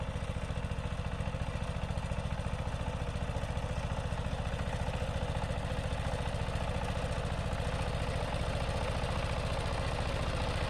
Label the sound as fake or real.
real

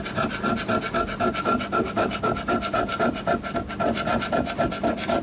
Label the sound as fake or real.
real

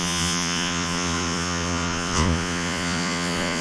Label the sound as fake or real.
fake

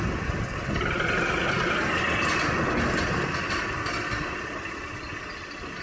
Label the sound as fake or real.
real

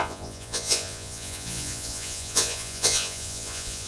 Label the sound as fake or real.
fake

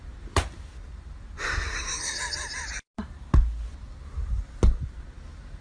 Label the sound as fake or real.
real